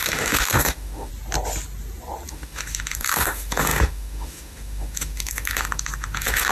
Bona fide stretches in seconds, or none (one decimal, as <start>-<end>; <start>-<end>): 1.1-2.3